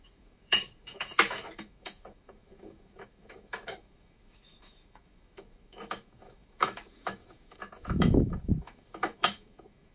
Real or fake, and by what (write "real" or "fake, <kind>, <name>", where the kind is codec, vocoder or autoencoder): fake, autoencoder, DAC-VAE